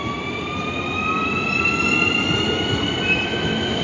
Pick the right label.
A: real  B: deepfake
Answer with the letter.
A